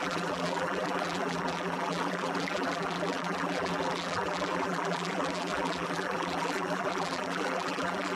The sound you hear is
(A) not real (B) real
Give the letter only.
A